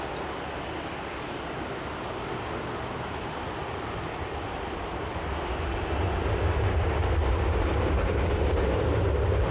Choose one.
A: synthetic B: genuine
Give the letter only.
B